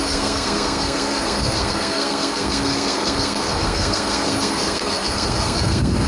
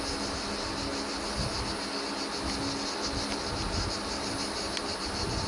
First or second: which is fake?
first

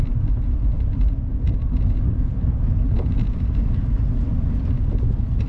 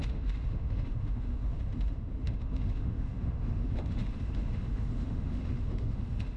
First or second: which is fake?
second